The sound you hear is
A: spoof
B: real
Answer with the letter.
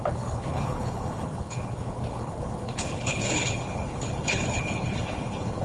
A